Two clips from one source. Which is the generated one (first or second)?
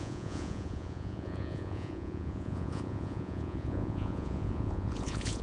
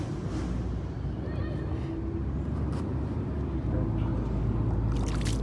first